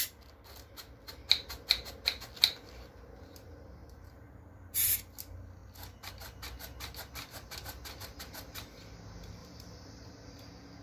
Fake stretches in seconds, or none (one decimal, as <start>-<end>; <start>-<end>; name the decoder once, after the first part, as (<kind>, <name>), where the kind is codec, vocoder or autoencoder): 3.8-4.4 (vocoder, BigVGAN v2); 9.4-10.1